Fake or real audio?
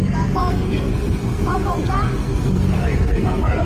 fake